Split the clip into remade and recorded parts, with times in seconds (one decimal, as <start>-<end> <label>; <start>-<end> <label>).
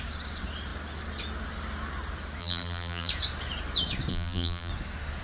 0.0-2.4 recorded; 2.4-3.1 remade; 3.1-4.1 recorded; 4.1-4.7 remade; 4.7-5.2 recorded